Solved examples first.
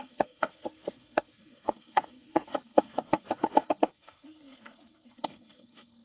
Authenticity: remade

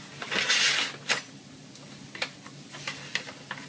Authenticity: recorded